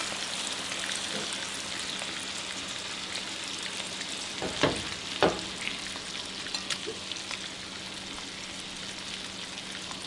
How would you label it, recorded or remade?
recorded